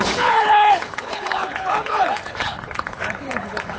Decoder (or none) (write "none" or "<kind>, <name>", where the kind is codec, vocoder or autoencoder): codec, HILCodec